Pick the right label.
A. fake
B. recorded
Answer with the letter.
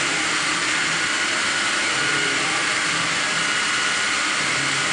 B